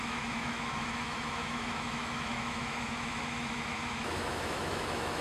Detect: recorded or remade remade